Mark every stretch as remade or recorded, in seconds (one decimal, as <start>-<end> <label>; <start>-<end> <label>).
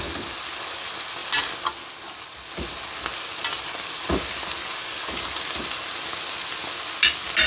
0.0-7.5 recorded